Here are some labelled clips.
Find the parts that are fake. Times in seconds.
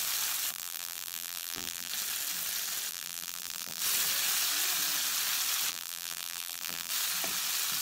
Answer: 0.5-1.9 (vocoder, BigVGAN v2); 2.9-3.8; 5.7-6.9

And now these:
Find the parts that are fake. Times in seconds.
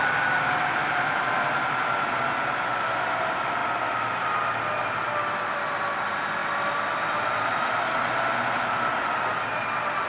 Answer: 3.6-4.8 (vocoder, BigVGAN v2); 6.4-9.1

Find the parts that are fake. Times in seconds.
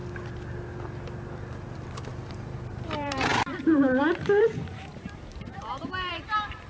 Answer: 2.3-6.7 (vocoder, BigVGAN v2)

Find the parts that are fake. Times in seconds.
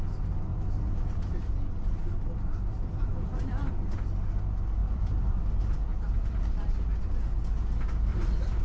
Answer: 0.5-3.7 (vocoder, BigVGAN v2); 4.8-5.4; 5.9-7.0; 8.1-8.6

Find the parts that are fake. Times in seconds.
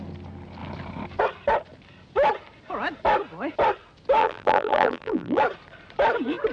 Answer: 4.2-5.4 (vocoder, BigVGAN v2)